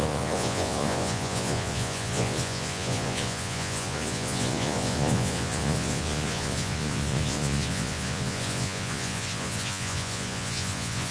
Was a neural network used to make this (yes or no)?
yes